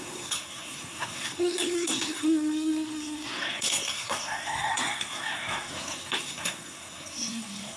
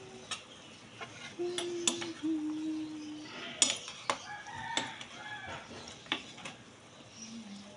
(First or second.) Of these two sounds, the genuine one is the second